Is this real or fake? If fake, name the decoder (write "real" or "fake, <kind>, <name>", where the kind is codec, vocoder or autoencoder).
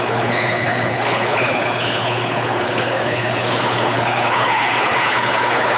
fake, codec, HILCodec